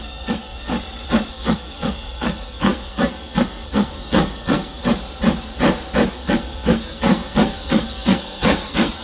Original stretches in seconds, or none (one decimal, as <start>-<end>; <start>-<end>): 0.7-1.3; 4.8-6.1